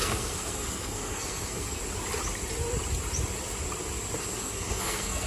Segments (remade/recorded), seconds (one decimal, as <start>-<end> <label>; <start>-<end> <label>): 0.0-1.8 remade; 1.8-4.2 recorded; 4.2-5.3 remade